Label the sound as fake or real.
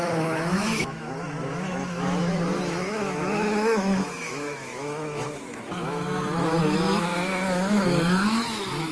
fake